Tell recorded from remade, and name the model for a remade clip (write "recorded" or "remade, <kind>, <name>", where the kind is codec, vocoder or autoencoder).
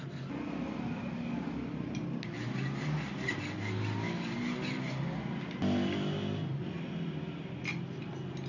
recorded